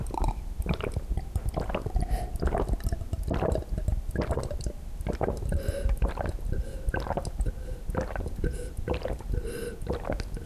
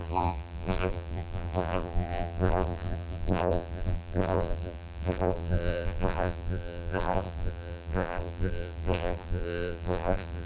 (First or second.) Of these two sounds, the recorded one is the first